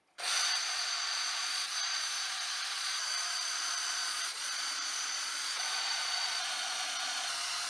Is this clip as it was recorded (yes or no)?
no